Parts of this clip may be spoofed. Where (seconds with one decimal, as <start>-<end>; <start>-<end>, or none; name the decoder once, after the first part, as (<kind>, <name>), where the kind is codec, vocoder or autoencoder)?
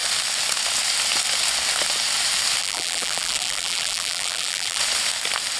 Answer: 2.6-4.8 (vocoder, BigVGAN v2)